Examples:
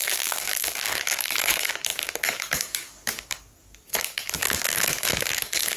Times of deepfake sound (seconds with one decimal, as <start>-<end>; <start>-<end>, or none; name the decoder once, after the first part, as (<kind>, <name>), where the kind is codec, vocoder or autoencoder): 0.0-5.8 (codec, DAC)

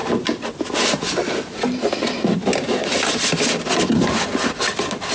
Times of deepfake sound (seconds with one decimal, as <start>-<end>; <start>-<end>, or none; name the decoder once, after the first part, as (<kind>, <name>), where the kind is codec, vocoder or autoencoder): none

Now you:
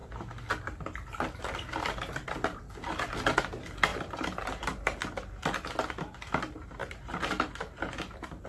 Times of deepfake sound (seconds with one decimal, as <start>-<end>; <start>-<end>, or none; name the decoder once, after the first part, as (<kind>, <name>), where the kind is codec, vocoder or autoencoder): 3.9-5.0 (vocoder, BigVGAN v2); 6.8-7.3

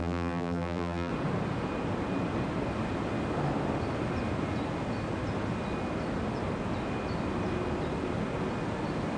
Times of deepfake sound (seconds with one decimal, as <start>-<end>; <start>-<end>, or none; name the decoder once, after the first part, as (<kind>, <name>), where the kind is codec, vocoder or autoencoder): 0.0-1.1 (vocoder, BigVGAN v2)

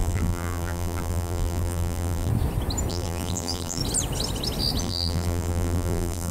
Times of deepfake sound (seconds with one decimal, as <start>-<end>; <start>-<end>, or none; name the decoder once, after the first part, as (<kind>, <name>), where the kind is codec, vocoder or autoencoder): 0.0-2.3 (vocoder, BigVGAN v2); 2.9-3.8; 4.8-6.3